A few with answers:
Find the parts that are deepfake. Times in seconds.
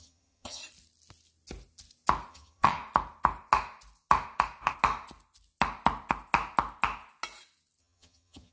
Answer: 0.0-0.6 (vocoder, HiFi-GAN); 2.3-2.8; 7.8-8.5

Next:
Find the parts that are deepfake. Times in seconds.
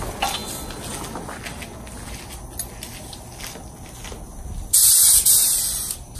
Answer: none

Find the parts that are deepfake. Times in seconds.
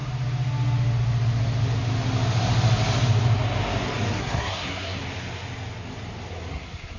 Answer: 4.2-5.0 (codec, SNAC); 6.5-7.0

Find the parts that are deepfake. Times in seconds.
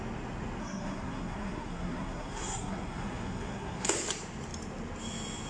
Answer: 0.6-3.9 (codec, SNAC)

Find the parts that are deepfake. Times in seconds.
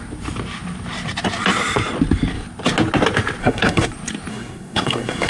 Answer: 3.4-3.9 (codec, SNAC); 4.3-5.3